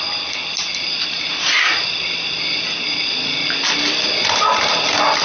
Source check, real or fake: real